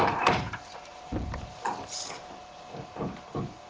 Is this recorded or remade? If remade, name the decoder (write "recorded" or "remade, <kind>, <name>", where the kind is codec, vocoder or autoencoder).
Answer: recorded